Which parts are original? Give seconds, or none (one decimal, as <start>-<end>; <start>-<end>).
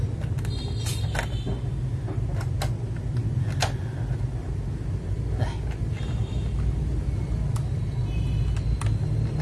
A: 0.0-9.4